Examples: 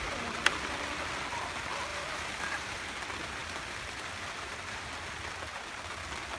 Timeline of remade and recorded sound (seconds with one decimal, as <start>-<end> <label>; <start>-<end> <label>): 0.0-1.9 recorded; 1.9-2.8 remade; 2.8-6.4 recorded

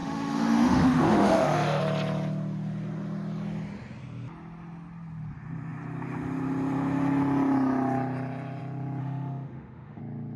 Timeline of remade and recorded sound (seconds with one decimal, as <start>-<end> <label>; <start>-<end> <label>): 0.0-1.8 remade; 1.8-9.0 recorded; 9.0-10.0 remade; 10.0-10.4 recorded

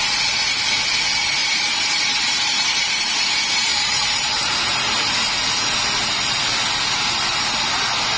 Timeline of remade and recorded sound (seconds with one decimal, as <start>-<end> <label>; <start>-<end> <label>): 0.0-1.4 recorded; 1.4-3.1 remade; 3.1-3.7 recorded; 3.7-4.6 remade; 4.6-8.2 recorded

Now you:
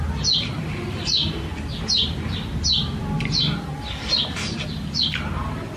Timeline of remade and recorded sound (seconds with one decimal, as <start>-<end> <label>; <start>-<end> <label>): 0.0-5.8 recorded

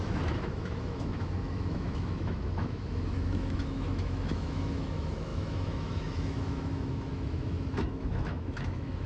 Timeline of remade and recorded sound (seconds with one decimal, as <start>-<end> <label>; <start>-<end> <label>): 0.0-9.1 remade